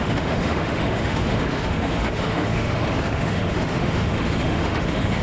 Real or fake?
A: fake